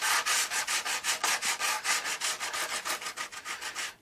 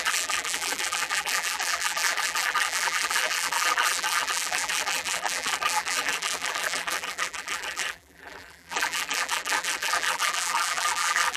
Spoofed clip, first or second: second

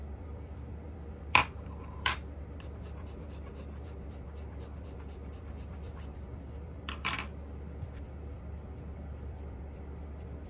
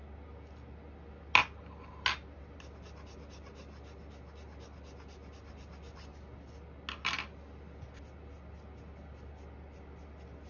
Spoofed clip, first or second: first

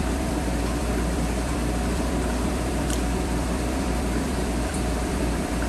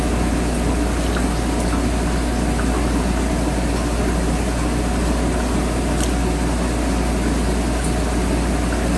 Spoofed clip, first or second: first